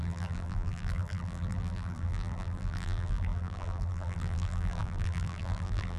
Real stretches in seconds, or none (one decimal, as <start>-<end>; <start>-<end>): none